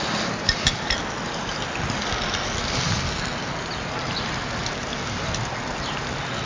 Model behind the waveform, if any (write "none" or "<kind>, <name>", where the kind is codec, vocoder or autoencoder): none